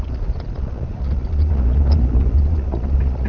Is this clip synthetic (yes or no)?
yes